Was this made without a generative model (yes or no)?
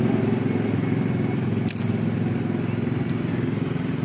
yes